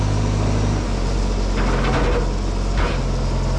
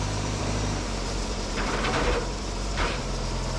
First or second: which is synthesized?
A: second